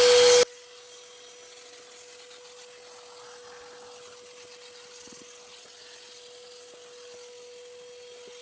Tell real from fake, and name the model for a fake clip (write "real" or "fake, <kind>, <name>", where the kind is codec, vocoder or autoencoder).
real